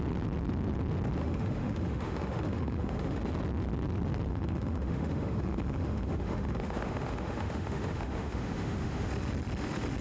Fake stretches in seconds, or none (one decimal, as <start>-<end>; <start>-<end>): 1.2-3.2; 4.3-9.1